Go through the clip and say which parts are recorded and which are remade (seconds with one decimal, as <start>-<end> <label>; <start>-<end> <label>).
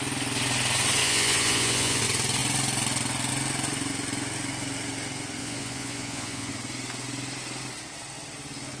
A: 0.0-1.0 recorded; 1.0-2.0 remade; 2.0-5.4 recorded; 5.4-6.5 remade; 6.5-8.8 recorded